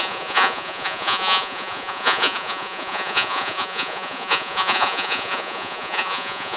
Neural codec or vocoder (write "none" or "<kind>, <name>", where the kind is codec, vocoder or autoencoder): vocoder, Vocos